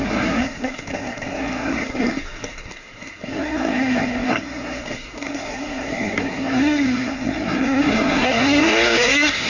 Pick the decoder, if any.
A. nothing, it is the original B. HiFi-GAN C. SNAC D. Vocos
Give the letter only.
C